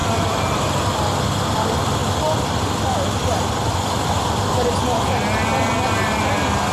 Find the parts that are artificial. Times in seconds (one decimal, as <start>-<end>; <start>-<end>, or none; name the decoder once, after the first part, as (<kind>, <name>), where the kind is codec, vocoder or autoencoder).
none